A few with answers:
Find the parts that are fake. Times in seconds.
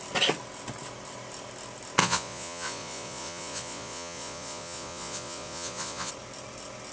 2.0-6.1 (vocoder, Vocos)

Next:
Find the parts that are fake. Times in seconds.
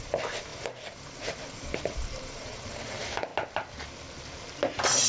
0.0-3.3 (vocoder, BigVGAN v2)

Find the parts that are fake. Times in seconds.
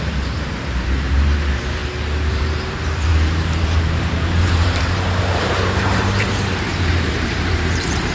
0.0-1.8 (vocoder, BigVGAN v2); 2.3-8.1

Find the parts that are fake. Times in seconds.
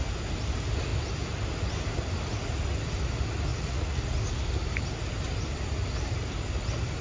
3.5-4.1 (vocoder, Vocos)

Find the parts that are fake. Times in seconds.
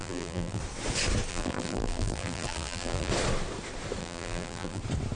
0.0-0.6 (vocoder, BigVGAN v2); 1.3-3.1; 4.0-4.8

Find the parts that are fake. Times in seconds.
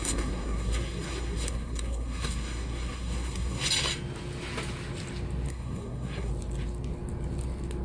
0.0-3.7 (codec, SNAC); 5.5-6.3